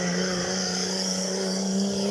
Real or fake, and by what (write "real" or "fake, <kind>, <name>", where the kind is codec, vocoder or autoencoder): fake, codec, DAC